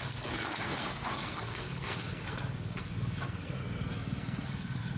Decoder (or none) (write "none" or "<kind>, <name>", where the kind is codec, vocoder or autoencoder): codec, SNAC